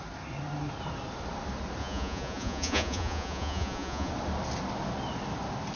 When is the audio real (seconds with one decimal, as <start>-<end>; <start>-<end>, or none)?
0.0-1.8; 4.1-5.8